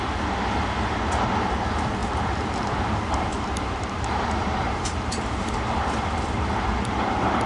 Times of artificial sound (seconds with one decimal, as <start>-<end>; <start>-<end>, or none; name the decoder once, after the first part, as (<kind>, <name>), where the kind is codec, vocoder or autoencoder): 2.0-2.7 (vocoder, BigVGAN v2); 3.3-7.5